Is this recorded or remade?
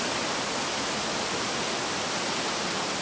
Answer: recorded